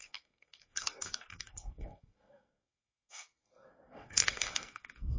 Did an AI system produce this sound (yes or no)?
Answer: yes